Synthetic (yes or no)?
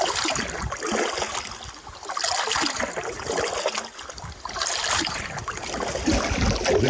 no